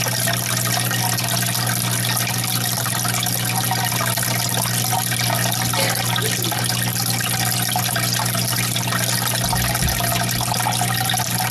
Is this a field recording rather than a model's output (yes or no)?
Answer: yes